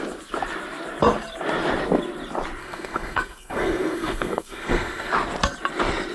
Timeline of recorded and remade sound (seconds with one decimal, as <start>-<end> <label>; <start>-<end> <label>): 0.0-2.6 recorded; 2.6-5.1 remade; 5.1-6.1 recorded